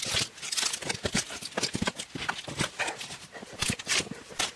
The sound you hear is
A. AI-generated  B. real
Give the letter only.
B